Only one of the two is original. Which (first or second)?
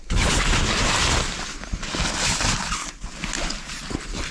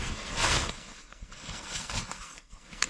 first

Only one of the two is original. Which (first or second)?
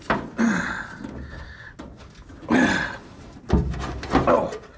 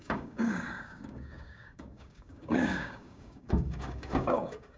first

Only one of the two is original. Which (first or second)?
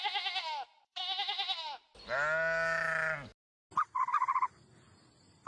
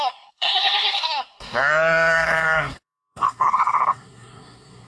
first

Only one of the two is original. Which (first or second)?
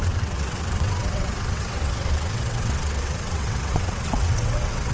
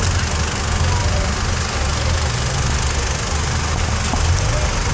second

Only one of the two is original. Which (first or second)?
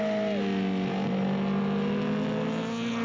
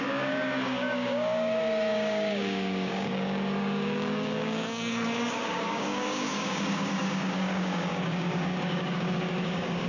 first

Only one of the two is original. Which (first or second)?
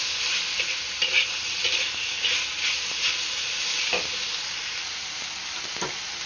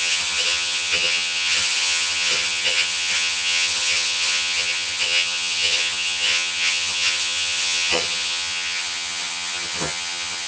first